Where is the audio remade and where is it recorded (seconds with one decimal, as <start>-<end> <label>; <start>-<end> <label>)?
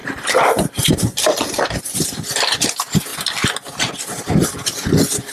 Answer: 0.0-1.8 remade; 1.8-5.3 recorded